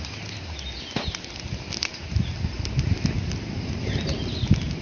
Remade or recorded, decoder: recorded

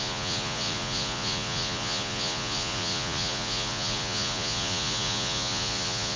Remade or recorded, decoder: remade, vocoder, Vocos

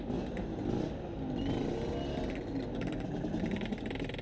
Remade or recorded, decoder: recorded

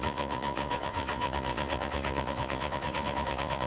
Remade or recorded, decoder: remade, vocoder, Vocos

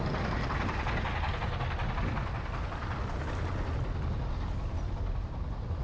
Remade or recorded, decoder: recorded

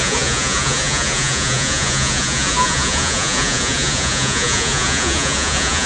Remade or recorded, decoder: remade, vocoder, Vocos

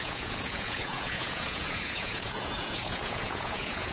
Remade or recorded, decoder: remade, vocoder, Vocos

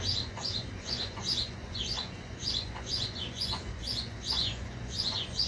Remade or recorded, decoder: remade, vocoder, Vocos